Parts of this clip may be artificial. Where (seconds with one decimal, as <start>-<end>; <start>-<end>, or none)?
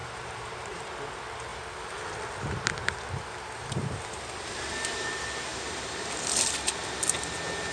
0.0-1.1; 5.5-6.5